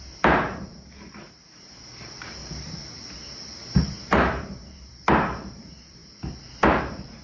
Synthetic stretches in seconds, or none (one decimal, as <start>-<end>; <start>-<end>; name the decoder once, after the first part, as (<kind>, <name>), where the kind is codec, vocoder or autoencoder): 0.0-2.4 (vocoder, BigVGAN v2); 3.8-7.2